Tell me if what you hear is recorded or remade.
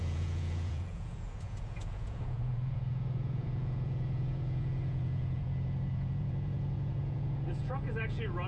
remade